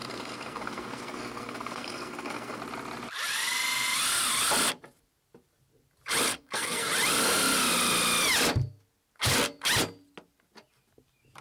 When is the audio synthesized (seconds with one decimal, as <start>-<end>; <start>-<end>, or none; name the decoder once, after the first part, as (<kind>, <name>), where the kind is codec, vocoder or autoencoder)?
0.0-2.6 (codec, SNAC); 6.3-6.9